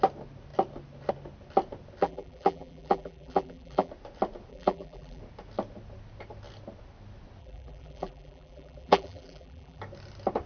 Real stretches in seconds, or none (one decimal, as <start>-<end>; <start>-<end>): 0.0-2.0; 3.9-4.5; 5.2-7.4; 9.8-10.5